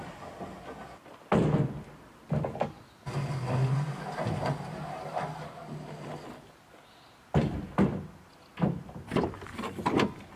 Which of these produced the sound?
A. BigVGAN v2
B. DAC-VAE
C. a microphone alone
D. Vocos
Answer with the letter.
C